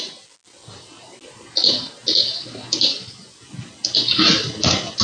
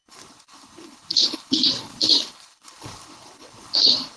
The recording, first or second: first